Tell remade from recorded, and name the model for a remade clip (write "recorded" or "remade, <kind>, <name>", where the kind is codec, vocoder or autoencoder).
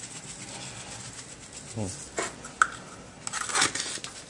recorded